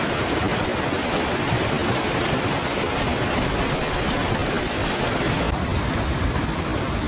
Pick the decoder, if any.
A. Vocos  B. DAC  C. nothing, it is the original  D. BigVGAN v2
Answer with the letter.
C